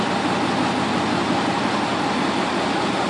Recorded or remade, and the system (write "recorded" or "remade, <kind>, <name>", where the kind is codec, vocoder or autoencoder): recorded